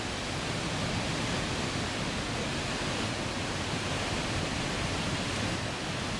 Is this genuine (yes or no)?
yes